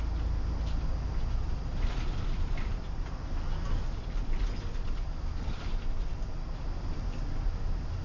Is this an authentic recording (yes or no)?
yes